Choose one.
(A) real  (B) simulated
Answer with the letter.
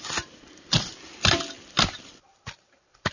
B